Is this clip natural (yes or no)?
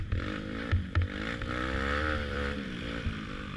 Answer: no